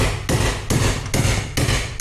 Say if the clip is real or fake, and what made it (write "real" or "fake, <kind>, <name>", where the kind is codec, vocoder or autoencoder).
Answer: real